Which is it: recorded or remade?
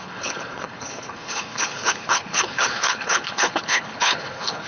remade